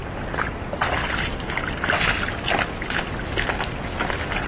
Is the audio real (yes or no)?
yes